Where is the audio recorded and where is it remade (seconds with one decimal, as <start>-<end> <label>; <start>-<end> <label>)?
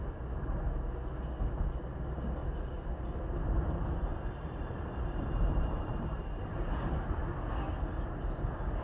0.0-2.4 recorded; 2.4-7.2 remade; 7.2-8.8 recorded